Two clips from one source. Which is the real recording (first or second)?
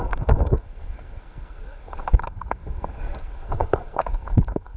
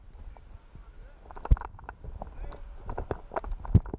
second